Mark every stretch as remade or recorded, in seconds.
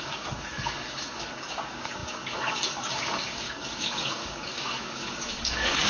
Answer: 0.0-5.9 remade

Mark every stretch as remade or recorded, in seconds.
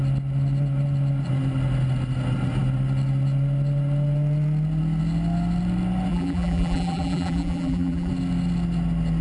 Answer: 0.0-6.1 recorded; 6.1-8.1 remade; 8.1-9.2 recorded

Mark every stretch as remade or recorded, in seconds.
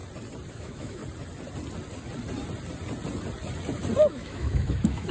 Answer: 0.0-0.5 recorded; 0.5-1.0 remade; 1.0-4.1 recorded; 4.1-5.1 remade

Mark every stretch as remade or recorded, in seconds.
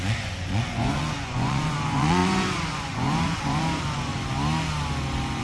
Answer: 0.0-4.1 remade; 4.1-5.4 recorded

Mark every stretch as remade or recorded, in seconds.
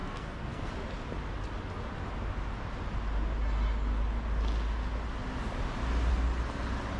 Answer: 0.0-0.7 remade; 0.7-7.0 recorded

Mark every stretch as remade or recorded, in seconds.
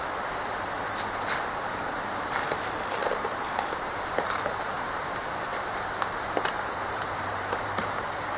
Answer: 0.0-3.0 recorded; 3.0-4.9 remade; 4.9-5.5 recorded; 5.5-8.4 remade